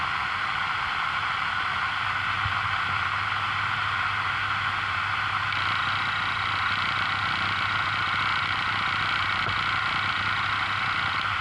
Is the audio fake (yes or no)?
no